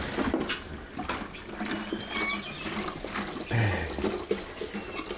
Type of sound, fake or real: real